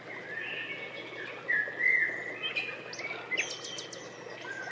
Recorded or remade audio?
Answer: recorded